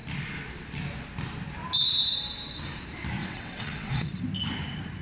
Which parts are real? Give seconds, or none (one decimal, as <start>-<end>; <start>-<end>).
0.0-3.2; 4.2-5.0